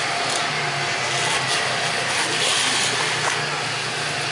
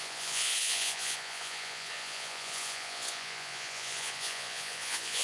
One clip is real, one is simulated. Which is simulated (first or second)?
second